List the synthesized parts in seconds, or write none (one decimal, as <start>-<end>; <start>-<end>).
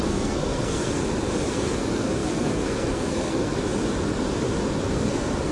0.0-1.0; 1.5-3.5; 4.8-5.5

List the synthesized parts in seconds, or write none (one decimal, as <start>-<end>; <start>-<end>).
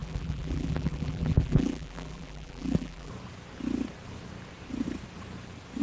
0.0-3.1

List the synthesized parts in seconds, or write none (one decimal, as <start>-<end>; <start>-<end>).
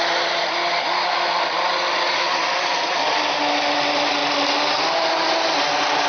none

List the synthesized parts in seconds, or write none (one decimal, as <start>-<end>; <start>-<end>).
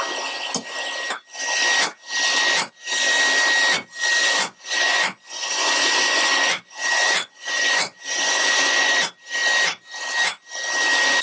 4.2-9.0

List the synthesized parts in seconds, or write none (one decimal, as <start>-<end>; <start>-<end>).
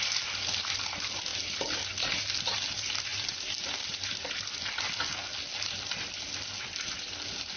none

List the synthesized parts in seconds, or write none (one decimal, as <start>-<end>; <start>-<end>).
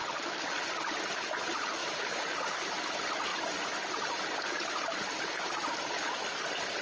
none